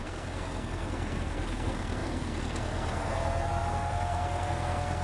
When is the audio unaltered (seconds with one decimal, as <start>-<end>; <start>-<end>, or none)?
none